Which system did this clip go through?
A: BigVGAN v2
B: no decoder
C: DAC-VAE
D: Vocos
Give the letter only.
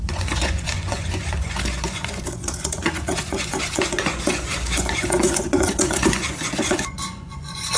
D